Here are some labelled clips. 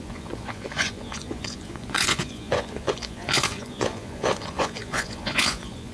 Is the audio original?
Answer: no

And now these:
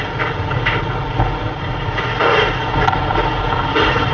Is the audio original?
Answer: yes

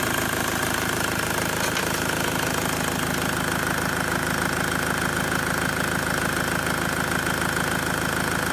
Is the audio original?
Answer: yes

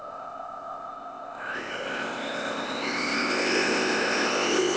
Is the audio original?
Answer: no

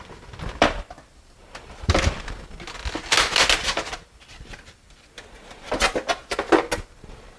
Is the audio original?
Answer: yes